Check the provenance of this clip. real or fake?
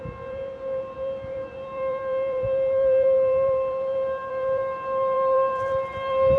fake